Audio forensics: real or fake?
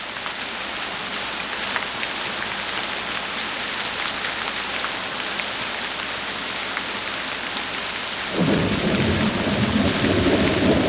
real